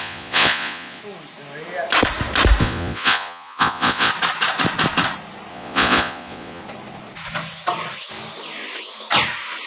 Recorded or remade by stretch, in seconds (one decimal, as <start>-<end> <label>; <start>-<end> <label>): 0.0-1.0 remade; 1.0-2.6 recorded; 2.6-4.1 remade; 4.1-5.5 recorded; 5.5-6.6 remade; 6.6-9.7 recorded